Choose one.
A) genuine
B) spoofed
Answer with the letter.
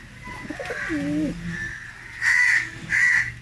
A